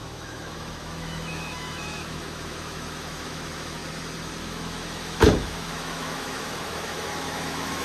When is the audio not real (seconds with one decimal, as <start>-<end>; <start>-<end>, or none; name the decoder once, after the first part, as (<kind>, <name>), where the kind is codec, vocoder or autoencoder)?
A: 0.0-3.8 (autoencoder, DAC-VAE); 4.4-7.8

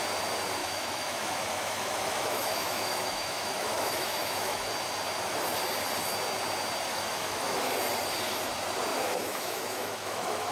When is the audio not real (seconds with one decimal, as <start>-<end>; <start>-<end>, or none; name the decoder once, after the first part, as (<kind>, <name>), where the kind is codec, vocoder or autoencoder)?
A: 0.6-4.7 (autoencoder, DAC-VAE); 6.9-7.7; 8.9-10.5

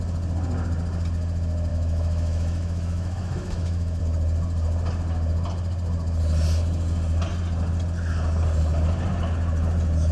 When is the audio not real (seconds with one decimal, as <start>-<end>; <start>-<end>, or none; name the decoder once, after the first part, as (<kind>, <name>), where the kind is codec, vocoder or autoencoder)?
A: 1.7-4.0 (autoencoder, DAC-VAE)

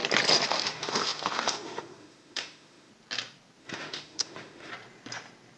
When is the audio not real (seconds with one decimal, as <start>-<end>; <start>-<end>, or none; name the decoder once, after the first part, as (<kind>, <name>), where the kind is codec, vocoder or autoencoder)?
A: 0.5-2.9 (autoencoder, DAC-VAE); 3.6-4.7

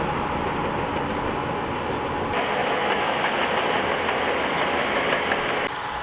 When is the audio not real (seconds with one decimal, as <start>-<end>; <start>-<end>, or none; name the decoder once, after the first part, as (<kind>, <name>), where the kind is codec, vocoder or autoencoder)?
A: 2.6-3.3 (autoencoder, DAC-VAE)

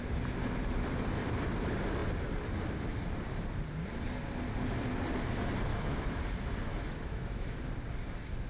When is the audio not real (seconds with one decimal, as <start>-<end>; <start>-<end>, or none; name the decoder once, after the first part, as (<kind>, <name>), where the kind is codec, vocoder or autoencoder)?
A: 5.7-6.2 (autoencoder, DAC-VAE); 6.7-7.6

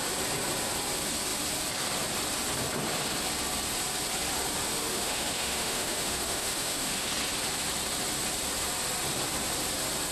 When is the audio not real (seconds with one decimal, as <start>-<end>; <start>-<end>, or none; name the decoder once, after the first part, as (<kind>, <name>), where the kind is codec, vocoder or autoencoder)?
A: 4.9-7.1 (autoencoder, DAC-VAE)

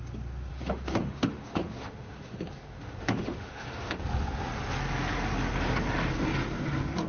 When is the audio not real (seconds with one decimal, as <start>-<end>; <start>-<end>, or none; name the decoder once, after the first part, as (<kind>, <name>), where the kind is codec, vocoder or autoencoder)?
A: 0.5-4.0 (autoencoder, DAC-VAE)